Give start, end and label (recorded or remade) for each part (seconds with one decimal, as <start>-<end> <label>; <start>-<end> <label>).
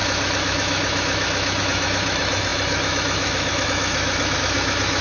0.0-5.0 remade